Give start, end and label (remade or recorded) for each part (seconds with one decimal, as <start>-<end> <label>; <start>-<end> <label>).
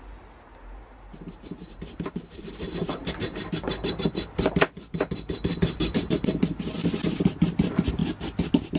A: 0.0-8.0 remade; 8.0-8.8 recorded